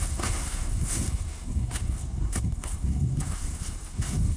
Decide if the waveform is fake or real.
fake